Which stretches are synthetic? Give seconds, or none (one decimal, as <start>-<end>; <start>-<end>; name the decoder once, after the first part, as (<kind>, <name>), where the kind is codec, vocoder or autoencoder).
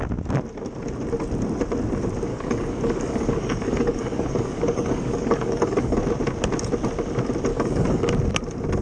2.3-6.0 (codec, DAC); 7.5-8.1